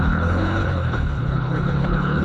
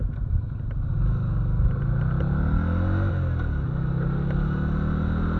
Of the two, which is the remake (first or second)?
first